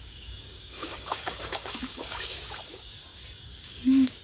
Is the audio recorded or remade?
remade